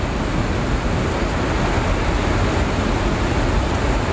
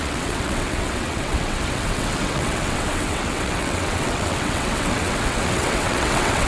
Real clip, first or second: first